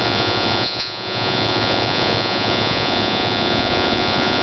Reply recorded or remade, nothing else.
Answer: remade